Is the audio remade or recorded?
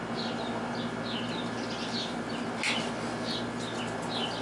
recorded